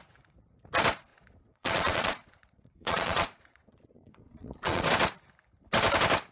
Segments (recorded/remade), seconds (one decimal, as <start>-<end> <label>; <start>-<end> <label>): 0.0-1.1 recorded; 1.1-4.9 remade; 4.9-6.3 recorded